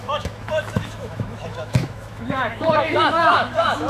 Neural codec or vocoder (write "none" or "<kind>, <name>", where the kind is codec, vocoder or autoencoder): autoencoder, DAC-VAE